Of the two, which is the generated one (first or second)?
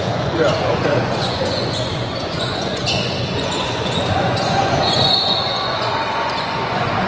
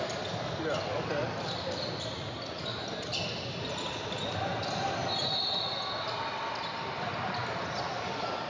first